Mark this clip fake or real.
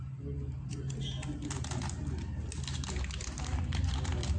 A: real